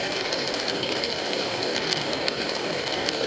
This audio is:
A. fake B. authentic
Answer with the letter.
A